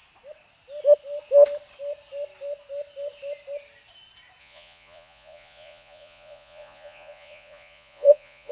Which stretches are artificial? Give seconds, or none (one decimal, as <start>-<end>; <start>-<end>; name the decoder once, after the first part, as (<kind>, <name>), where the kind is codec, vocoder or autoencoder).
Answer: 4.4-8.5 (vocoder, Vocos)